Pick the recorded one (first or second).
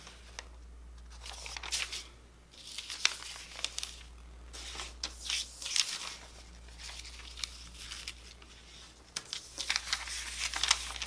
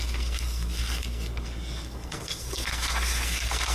first